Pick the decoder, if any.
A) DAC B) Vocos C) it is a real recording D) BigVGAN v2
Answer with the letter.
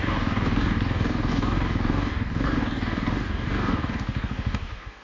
A